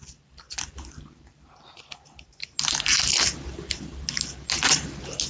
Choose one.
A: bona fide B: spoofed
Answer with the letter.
A